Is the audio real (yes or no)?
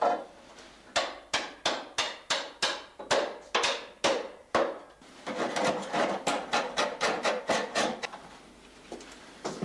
yes